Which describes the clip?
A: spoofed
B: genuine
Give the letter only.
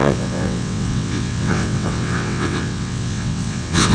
A